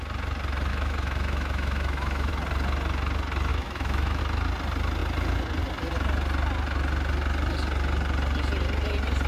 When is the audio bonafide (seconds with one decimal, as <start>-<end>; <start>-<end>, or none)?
0.0-0.7; 2.3-3.5; 4.2-9.3